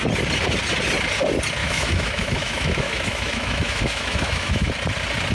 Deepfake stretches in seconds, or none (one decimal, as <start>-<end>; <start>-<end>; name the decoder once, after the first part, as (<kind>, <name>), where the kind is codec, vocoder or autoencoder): 1.6-4.7 (autoencoder, DAC-VAE)